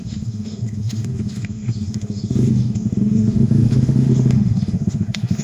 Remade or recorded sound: remade